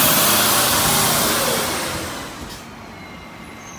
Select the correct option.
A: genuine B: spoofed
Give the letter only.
A